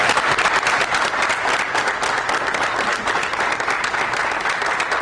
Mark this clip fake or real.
real